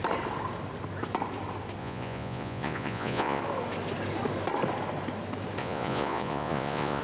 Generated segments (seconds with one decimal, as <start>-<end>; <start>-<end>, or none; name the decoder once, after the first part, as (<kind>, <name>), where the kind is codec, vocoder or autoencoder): 1.8-3.4 (vocoder, Vocos); 5.6-7.0